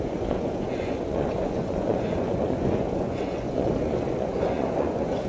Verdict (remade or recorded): remade